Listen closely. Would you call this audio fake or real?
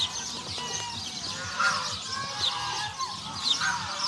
real